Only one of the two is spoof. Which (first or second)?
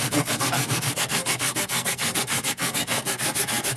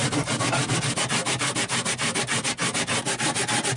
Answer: first